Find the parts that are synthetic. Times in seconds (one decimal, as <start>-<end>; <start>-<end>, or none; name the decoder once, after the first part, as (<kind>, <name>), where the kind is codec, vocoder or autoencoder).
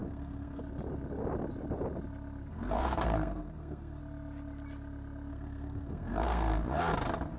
0.0-0.6 (codec, SNAC); 2.5-4.0; 5.3-6.8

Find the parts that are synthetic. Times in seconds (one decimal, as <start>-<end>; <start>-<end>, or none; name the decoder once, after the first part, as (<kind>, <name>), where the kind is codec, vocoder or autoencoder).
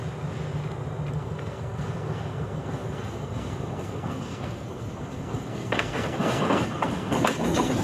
1.1-7.8 (codec, SNAC)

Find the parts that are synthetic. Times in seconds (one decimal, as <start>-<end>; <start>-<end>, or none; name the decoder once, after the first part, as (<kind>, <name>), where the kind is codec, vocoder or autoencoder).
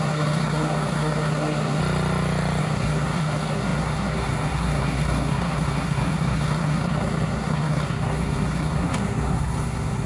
0.0-1.8 (codec, SNAC); 2.6-10.1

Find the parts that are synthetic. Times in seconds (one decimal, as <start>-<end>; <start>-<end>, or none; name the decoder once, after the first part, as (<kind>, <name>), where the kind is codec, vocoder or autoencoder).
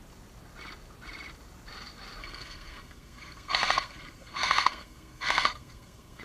2.2-6.2 (codec, SNAC)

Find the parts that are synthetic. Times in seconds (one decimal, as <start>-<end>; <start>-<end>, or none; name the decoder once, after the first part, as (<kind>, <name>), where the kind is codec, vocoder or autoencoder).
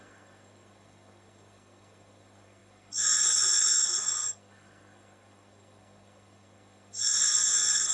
0.0-7.9 (codec, SNAC)